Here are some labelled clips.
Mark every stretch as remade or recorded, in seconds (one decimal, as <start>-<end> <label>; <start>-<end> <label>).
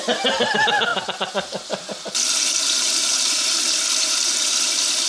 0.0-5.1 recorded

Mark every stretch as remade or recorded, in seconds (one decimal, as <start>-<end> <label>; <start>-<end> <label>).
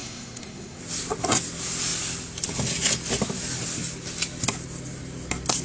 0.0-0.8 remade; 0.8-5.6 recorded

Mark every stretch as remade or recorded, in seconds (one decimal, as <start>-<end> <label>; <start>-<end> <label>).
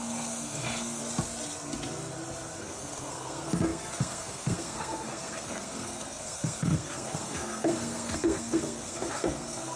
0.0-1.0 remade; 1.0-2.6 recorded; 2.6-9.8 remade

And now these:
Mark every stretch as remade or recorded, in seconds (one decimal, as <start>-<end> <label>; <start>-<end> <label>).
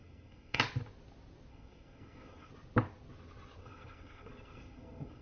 0.0-0.6 remade; 0.6-1.5 recorded; 1.5-2.5 remade; 2.5-3.6 recorded; 3.6-5.2 remade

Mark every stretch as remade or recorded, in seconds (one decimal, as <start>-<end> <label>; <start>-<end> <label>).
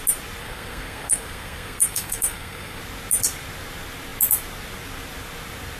0.0-0.4 recorded; 0.4-2.8 remade; 2.8-5.8 recorded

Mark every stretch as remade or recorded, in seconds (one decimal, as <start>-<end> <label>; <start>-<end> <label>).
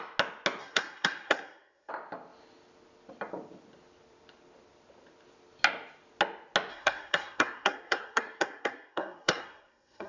0.0-0.6 recorded; 0.6-1.9 remade; 1.9-6.7 recorded; 6.7-10.1 remade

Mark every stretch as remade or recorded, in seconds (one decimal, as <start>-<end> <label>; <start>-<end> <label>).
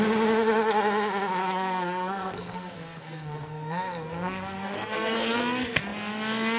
0.0-1.4 recorded; 1.4-5.4 remade; 5.4-6.6 recorded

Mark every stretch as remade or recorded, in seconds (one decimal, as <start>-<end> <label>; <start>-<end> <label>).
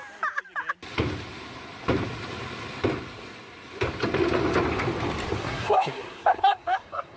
0.0-5.4 recorded; 5.4-7.2 remade